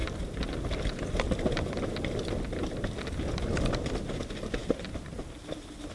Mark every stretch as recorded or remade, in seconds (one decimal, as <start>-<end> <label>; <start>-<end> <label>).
0.0-5.9 recorded